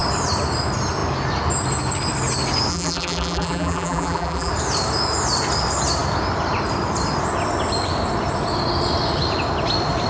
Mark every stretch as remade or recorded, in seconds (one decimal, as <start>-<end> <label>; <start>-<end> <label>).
0.0-2.7 recorded; 2.7-4.5 remade; 4.5-10.1 recorded